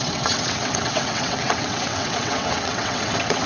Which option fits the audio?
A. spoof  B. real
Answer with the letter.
A